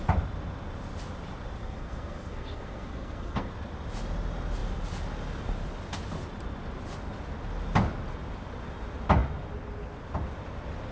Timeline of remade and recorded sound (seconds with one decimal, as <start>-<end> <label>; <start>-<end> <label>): 0.0-1.6 recorded; 1.6-3.5 remade; 3.5-10.9 recorded